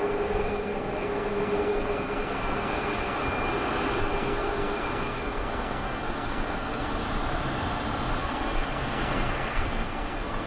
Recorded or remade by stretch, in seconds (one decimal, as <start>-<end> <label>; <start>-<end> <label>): 0.0-3.2 remade; 3.2-4.0 recorded; 4.0-7.0 remade; 7.0-8.2 recorded; 8.2-10.5 remade